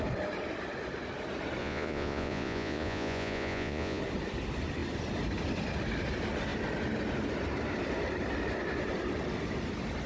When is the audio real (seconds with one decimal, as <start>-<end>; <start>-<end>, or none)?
0.0-1.6; 4.0-10.1